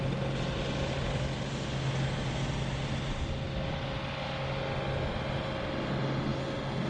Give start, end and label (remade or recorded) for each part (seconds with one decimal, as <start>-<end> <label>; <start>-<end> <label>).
0.0-6.9 recorded

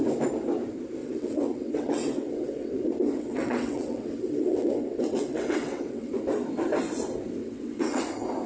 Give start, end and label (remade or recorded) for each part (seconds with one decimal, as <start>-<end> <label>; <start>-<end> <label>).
0.0-1.0 recorded; 1.0-6.1 remade; 6.1-7.4 recorded; 7.4-8.0 remade; 8.0-8.5 recorded

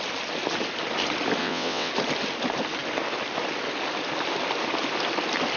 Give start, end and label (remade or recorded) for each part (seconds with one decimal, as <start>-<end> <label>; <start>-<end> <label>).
0.0-1.4 recorded; 1.4-1.9 remade; 1.9-5.6 recorded

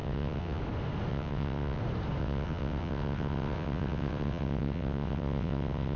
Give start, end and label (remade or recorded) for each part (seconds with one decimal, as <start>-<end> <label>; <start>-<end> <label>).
0.0-0.6 remade; 0.6-1.1 recorded; 1.1-1.8 remade; 1.8-2.2 recorded; 2.2-6.0 remade

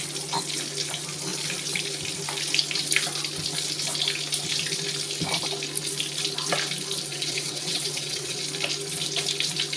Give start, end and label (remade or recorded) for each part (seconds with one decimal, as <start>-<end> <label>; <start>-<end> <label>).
0.0-7.1 recorded; 7.1-8.4 remade; 8.4-9.8 recorded

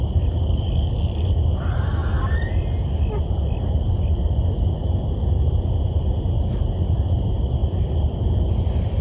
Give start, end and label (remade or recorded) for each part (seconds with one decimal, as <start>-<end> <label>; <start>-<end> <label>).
0.0-9.0 recorded